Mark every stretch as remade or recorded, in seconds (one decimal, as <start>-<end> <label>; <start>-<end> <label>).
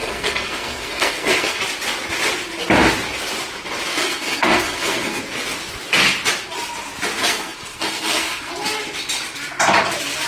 0.0-1.6 remade; 1.6-3.9 recorded; 3.9-5.2 remade; 5.2-7.2 recorded; 7.2-8.5 remade; 8.5-10.3 recorded